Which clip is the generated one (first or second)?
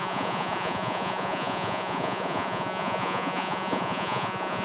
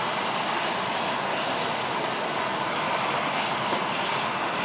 first